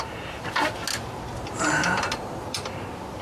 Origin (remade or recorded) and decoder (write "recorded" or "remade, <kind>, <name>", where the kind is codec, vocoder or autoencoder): recorded